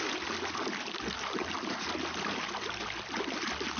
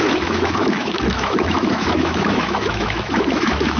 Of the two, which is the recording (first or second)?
first